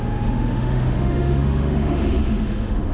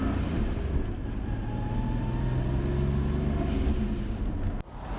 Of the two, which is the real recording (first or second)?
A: second